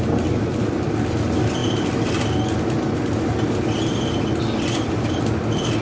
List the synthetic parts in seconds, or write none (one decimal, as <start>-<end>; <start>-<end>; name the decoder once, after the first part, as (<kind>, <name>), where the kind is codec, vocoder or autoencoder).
none